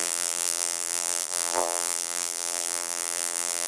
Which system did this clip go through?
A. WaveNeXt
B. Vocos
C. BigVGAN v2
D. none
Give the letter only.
C